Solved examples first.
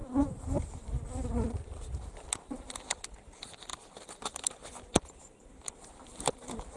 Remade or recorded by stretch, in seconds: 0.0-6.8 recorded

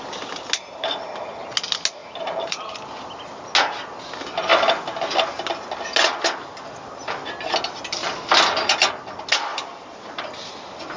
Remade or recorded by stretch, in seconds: 0.0-2.0 recorded; 2.0-2.6 remade; 2.6-9.5 recorded; 9.5-10.2 remade; 10.2-11.0 recorded

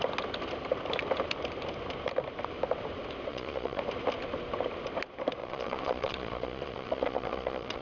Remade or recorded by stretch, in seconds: 0.0-3.3 recorded; 3.3-3.8 remade; 3.8-5.4 recorded; 5.4-7.8 remade

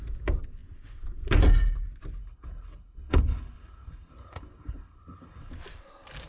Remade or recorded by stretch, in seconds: 0.0-2.2 recorded; 2.2-5.5 remade; 5.5-6.3 recorded

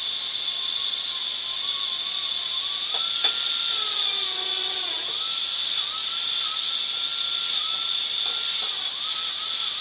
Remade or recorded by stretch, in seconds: 0.0-9.8 recorded

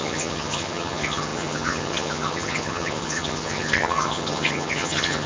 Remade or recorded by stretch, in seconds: 0.0-5.3 remade